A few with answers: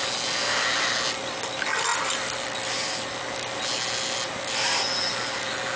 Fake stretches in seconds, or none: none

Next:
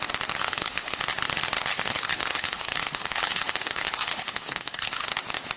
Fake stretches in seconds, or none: 0.4-1.0 (codec, HILCodec); 1.7-5.1

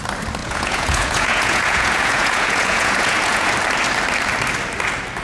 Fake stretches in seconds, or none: 0.4-3.5 (vocoder, Vocos)

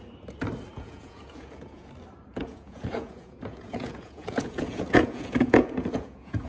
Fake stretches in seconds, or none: 0.7-1.9 (vocoder, Vocos); 2.3-6.5

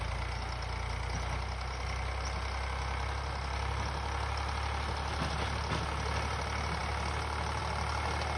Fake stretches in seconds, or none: none

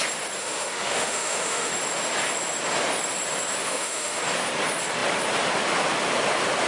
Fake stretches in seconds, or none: 0.4-1.7 (autoencoder, DAC-VAE); 3.6-4.2